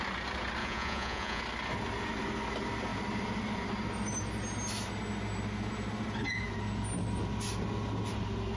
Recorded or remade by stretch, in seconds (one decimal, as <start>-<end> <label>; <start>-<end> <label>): 0.0-0.6 recorded; 0.6-1.4 remade; 1.4-8.6 recorded

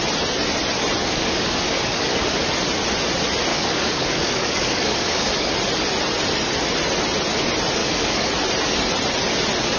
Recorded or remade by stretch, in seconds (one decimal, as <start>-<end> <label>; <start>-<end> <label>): 0.0-1.0 recorded; 1.0-2.4 remade; 2.4-3.5 recorded; 3.5-5.5 remade; 5.5-7.8 recorded; 7.8-8.3 remade; 8.3-9.8 recorded

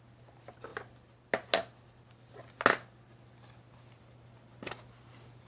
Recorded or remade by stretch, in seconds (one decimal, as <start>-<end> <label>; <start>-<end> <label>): 0.0-5.5 recorded

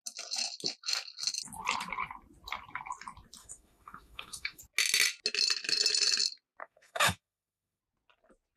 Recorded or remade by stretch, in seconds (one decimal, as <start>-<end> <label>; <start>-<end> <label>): 0.0-3.4 recorded; 3.4-4.6 remade; 4.6-6.6 recorded; 6.6-7.8 remade; 7.8-8.6 recorded

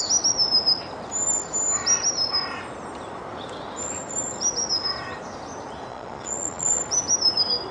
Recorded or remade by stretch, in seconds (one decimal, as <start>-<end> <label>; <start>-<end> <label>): 0.0-5.9 recorded; 5.9-6.8 remade; 6.8-7.7 recorded